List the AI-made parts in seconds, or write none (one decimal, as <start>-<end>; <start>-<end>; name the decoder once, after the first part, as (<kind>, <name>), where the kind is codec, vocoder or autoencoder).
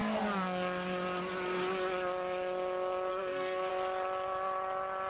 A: 3.1-3.7 (codec, SNAC)